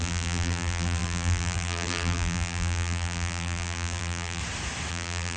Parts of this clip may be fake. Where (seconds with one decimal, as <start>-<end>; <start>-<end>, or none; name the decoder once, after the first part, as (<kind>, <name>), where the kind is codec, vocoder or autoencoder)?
0.0-4.4 (vocoder, BigVGAN v2); 4.9-5.4